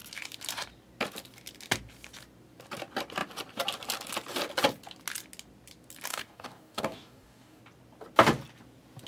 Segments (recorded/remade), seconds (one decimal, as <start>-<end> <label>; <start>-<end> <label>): 0.0-6.1 recorded; 6.1-7.6 remade; 7.6-9.1 recorded